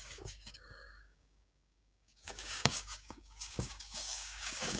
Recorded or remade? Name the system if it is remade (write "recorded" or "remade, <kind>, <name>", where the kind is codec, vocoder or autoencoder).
remade, codec, DAC